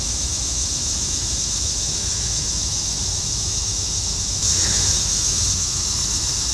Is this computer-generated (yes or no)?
yes